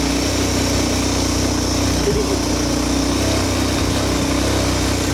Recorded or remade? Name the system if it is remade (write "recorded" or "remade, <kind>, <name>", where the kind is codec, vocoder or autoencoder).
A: recorded